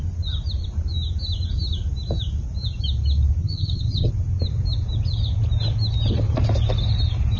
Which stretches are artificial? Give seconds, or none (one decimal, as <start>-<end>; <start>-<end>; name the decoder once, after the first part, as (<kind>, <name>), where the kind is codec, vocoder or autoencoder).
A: 3.4-4.1 (vocoder, HiFi-GAN)